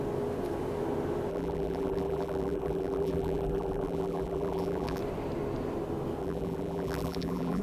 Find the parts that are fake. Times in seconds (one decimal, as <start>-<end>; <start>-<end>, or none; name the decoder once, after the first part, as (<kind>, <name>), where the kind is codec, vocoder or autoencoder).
1.3-5.0 (vocoder, BigVGAN v2); 6.2-7.6